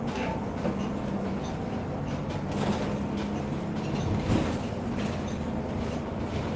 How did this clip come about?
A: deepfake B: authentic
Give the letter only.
B